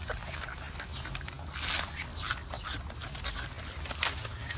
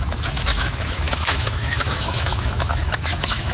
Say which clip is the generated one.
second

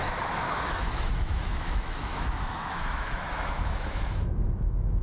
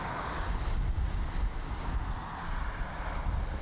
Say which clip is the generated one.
first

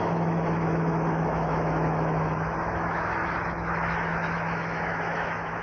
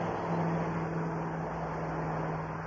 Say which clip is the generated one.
first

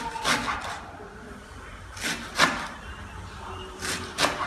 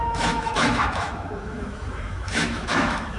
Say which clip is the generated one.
second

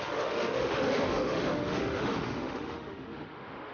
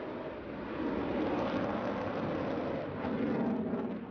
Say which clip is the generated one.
first